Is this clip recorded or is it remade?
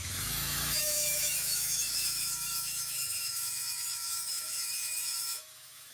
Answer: remade